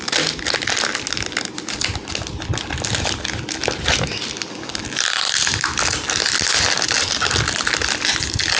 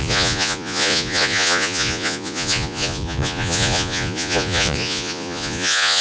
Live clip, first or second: first